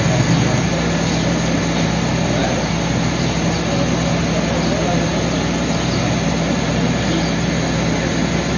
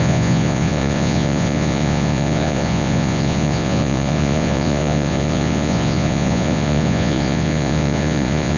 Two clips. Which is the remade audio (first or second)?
second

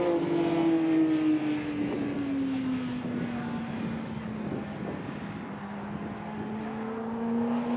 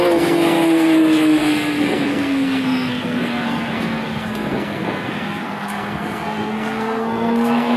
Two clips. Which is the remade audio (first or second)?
second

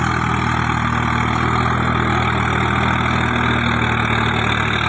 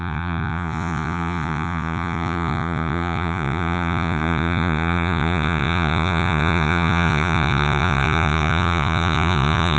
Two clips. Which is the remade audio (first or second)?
second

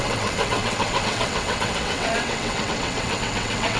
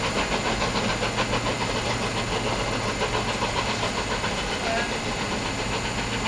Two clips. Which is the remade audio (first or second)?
first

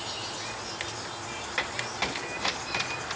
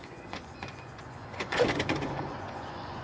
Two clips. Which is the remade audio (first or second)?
second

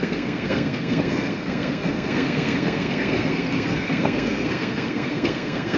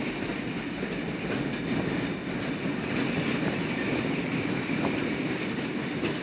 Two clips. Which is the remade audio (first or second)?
first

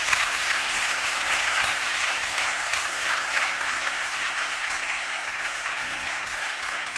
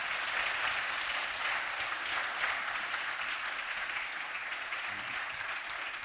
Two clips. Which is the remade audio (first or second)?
first